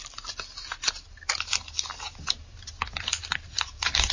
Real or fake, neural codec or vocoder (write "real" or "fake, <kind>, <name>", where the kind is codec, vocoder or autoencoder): real